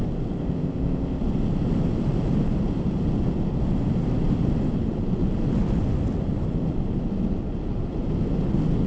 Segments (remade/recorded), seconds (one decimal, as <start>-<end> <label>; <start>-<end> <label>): 0.0-0.4 recorded; 0.4-1.2 remade; 1.2-8.9 recorded

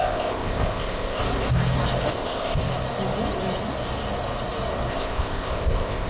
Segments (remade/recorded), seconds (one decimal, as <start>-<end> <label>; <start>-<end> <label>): 0.0-1.2 remade; 1.2-2.1 recorded; 2.1-2.7 remade; 2.7-4.9 recorded; 4.9-6.1 remade

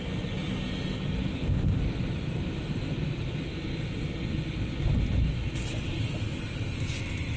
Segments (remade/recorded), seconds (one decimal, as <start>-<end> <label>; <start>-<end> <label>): 0.0-1.3 recorded; 1.3-1.8 remade; 1.8-7.4 recorded

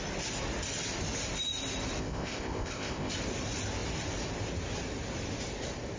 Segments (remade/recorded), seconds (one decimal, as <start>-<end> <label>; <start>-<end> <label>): 0.0-2.0 recorded; 2.0-3.1 remade; 3.1-6.0 recorded

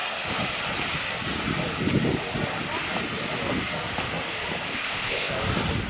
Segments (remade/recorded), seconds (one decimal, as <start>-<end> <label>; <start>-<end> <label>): 0.0-4.7 recorded; 4.7-5.3 remade; 5.3-5.9 recorded

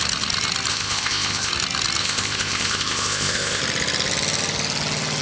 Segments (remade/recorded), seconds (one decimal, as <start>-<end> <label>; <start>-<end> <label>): 0.0-0.7 recorded; 0.7-1.5 remade; 1.5-2.0 recorded; 2.0-3.6 remade; 3.6-5.2 recorded